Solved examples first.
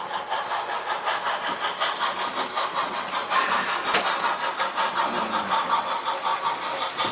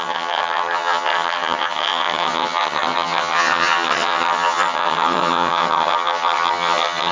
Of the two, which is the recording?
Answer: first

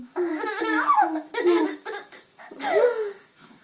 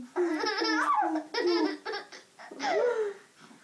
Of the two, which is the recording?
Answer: second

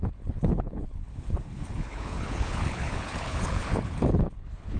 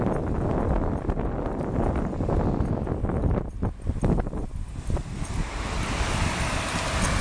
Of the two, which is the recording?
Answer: second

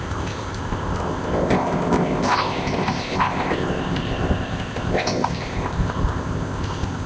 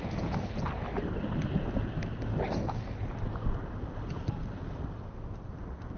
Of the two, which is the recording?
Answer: second